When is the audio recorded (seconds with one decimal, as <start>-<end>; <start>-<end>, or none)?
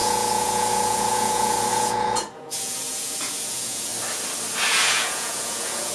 3.9-4.7